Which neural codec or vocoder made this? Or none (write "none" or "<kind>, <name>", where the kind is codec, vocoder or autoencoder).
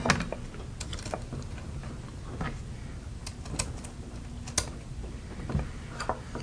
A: none